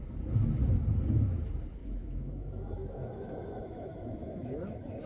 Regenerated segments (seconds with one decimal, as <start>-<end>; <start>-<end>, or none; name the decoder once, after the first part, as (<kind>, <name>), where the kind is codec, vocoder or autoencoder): 1.8-5.1 (autoencoder, DAC-VAE)